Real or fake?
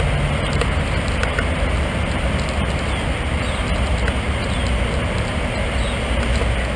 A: real